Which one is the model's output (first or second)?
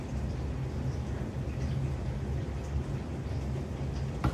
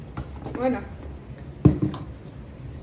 second